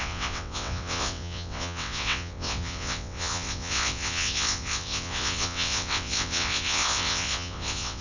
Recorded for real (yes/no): no